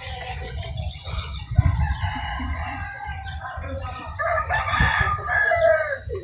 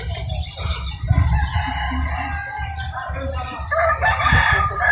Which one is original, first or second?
second